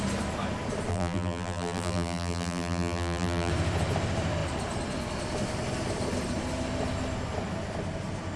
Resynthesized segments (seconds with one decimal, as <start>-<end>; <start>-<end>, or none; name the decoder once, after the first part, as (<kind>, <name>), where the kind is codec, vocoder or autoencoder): 0.9-3.5 (vocoder, BigVGAN v2)